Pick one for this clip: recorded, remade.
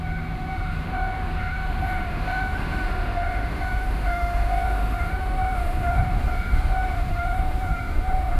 remade